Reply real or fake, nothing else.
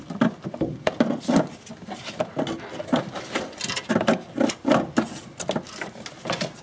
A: real